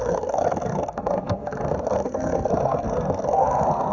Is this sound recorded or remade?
remade